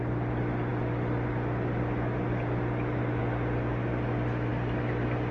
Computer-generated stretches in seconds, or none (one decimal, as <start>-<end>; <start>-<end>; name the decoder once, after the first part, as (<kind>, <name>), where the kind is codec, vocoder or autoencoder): none